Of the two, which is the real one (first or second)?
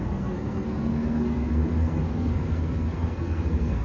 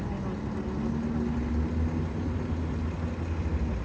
second